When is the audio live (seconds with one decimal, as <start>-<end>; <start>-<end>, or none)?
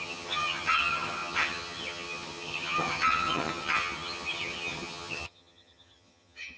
none